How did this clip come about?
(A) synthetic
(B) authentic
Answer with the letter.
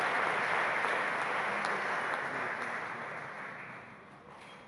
B